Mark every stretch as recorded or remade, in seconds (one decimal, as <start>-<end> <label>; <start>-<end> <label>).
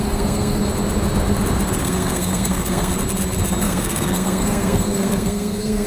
0.0-0.6 remade; 0.6-1.8 recorded; 1.8-2.9 remade; 2.9-3.6 recorded; 3.6-5.9 remade